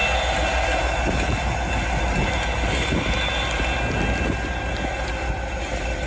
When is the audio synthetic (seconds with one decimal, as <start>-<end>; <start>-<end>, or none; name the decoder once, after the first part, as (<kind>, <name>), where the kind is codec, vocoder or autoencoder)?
none